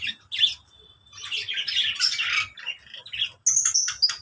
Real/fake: real